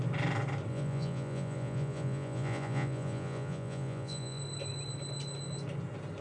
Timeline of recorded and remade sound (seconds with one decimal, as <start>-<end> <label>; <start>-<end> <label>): 0.0-0.7 recorded; 0.7-4.4 remade; 4.4-6.2 recorded